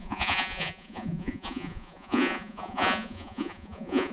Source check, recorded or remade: remade